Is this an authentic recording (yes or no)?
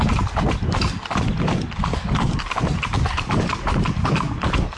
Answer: yes